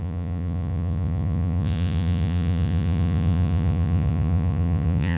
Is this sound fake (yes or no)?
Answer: yes